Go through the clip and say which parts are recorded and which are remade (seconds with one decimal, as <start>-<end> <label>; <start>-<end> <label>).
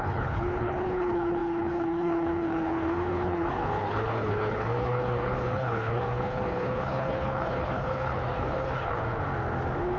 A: 0.0-9.0 remade; 9.0-10.0 recorded